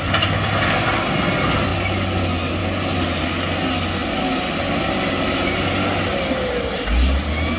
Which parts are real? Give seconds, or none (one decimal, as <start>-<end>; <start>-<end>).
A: 0.0-7.6